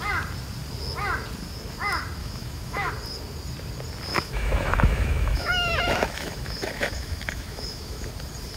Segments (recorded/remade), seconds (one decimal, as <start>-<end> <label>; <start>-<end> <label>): 0.0-2.2 recorded; 2.2-2.9 remade; 2.9-4.1 recorded; 4.1-8.1 remade; 8.1-8.6 recorded